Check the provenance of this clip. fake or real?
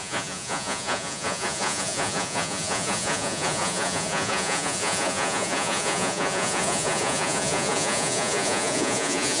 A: fake